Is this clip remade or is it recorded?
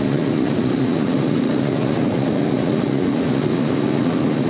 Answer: remade